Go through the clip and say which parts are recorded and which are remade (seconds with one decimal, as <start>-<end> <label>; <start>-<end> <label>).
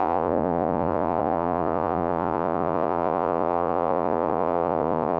0.0-5.2 remade